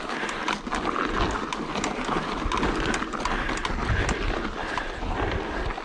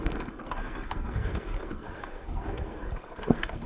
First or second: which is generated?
second